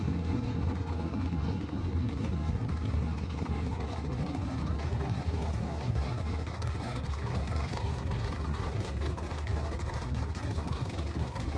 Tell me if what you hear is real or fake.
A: fake